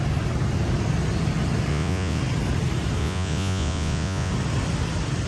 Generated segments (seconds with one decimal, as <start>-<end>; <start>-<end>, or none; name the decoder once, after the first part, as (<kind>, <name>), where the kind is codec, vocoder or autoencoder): 1.7-2.2 (vocoder, Vocos); 3.0-4.3